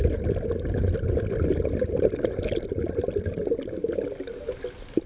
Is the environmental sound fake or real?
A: real